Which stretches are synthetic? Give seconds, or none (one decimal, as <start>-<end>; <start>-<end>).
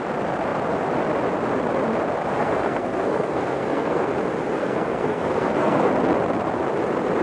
2.4-4.1; 4.6-5.9